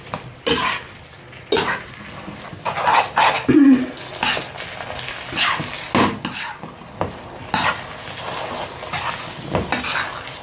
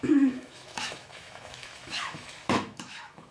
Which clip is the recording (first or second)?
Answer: first